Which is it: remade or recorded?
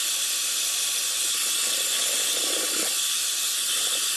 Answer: recorded